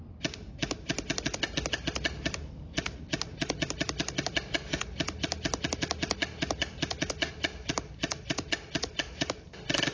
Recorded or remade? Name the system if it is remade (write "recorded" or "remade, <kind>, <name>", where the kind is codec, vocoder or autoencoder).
recorded